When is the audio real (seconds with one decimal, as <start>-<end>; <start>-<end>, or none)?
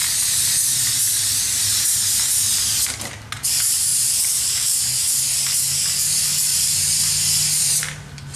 0.0-3.9; 4.8-6.5; 7.1-8.4